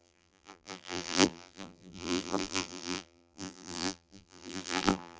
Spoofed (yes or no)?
yes